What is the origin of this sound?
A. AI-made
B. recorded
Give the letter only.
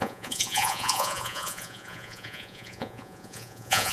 A